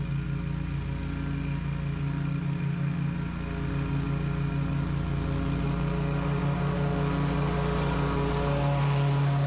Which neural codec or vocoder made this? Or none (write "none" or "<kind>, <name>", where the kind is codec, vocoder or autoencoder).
none